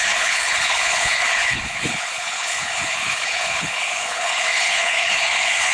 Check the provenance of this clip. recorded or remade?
remade